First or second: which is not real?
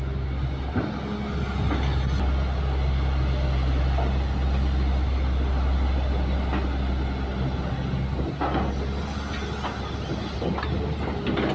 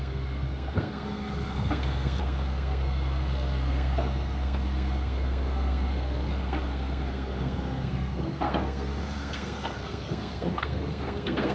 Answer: second